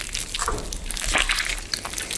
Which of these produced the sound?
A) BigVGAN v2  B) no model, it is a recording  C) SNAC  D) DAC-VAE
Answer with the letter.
B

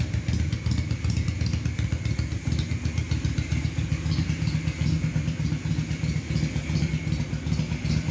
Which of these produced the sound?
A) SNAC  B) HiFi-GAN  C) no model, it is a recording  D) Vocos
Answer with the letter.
C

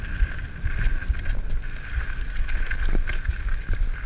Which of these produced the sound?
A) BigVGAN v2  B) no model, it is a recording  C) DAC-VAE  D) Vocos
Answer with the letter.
B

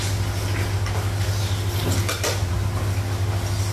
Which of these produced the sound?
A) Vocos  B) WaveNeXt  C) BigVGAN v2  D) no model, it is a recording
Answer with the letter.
D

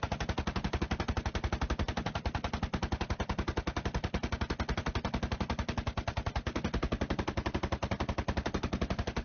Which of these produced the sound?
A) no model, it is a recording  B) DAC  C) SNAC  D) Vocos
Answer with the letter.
A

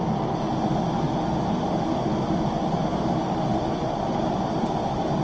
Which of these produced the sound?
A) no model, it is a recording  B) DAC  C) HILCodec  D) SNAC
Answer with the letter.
A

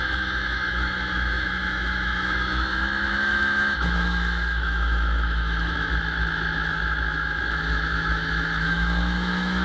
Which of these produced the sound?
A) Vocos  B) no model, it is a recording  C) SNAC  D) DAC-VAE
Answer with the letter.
D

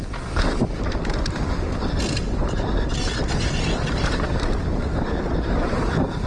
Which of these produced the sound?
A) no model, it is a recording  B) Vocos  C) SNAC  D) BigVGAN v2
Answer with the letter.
D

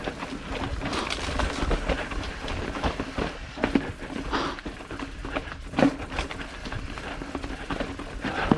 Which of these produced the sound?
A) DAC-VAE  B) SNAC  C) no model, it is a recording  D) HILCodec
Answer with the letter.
C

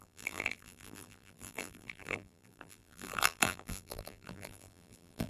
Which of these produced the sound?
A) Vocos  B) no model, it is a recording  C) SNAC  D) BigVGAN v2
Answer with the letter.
D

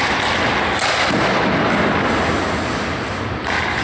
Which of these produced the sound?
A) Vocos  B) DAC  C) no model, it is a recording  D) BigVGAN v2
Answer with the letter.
C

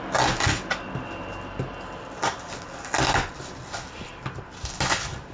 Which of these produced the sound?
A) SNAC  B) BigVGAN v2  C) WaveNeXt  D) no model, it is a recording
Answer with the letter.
D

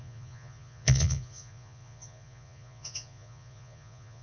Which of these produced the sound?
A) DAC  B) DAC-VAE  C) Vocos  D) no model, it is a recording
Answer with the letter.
C